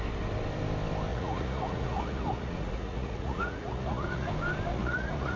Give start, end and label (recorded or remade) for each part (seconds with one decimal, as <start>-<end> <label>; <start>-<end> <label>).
0.0-1.1 recorded; 1.1-4.3 remade; 4.3-4.7 recorded; 4.7-5.4 remade